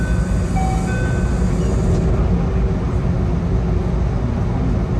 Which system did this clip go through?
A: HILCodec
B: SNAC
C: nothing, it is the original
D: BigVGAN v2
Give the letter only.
C